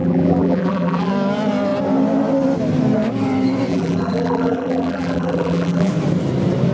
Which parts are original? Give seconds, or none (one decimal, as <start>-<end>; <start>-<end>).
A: 1.1-3.7; 5.9-6.7